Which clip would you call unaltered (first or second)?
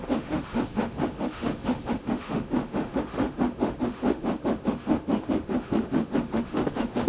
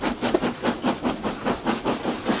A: second